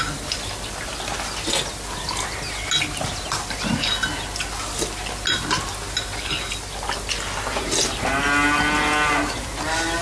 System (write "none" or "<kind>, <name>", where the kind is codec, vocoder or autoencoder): none